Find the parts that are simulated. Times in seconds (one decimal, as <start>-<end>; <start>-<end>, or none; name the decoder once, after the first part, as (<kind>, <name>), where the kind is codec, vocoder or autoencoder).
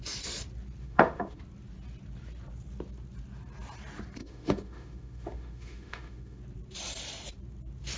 0.8-1.4 (autoencoder, DAC-VAE); 4.2-6.4